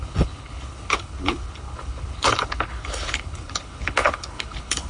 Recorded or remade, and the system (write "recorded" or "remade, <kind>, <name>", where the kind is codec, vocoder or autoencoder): remade, codec, HILCodec